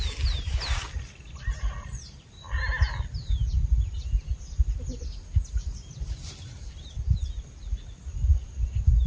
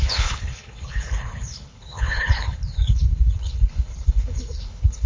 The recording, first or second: first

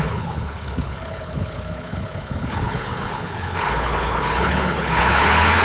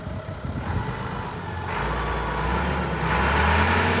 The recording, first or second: second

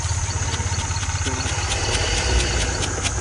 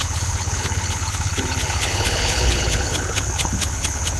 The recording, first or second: first